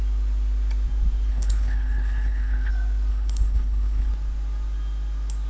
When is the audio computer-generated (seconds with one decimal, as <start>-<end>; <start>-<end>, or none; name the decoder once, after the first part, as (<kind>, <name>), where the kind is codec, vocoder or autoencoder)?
1.3-2.7 (codec, HILCodec); 3.1-4.1